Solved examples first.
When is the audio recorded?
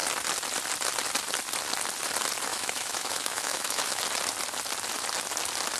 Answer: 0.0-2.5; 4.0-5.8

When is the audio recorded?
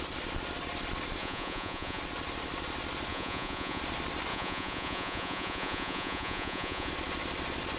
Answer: 0.0-1.2; 2.0-3.1; 3.8-4.3; 6.9-7.8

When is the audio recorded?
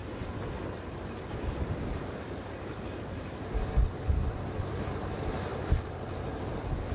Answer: 0.0-6.9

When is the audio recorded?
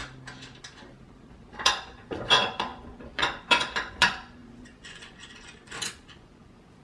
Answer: 0.0-1.5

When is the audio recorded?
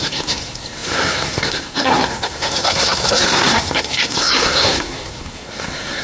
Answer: none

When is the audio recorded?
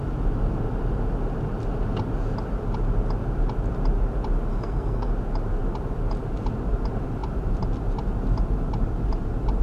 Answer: 0.0-4.5; 5.1-9.6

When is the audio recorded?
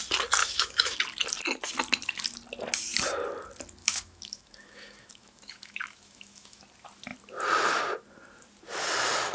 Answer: 0.0-0.4; 1.0-3.8; 6.6-9.3